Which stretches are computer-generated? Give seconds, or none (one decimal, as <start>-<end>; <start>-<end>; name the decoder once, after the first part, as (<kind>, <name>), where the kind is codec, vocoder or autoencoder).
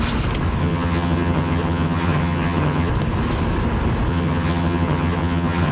0.6-2.9 (vocoder, HiFi-GAN); 4.1-5.7